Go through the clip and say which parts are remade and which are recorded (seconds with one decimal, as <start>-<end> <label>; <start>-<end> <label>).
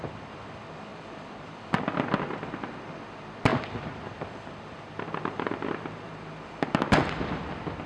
0.0-0.9 recorded; 0.9-1.8 remade; 1.8-3.5 recorded; 3.5-6.5 remade; 6.5-7.9 recorded